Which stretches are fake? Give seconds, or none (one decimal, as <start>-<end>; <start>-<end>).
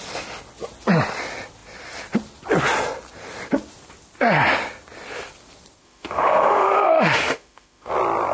5.8-7.9